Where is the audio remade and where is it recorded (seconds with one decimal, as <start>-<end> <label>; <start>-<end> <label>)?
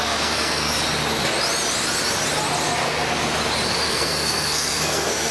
0.0-0.7 remade; 0.7-3.9 recorded; 3.9-5.3 remade